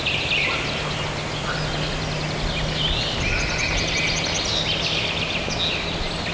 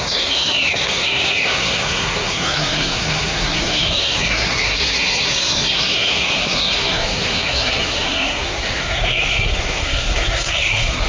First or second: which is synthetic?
second